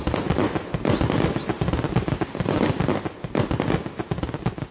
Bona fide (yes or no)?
yes